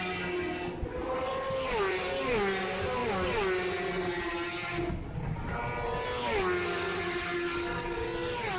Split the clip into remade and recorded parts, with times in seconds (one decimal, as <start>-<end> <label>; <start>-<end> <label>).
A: 0.0-1.0 recorded; 1.0-2.0 remade; 2.0-8.6 recorded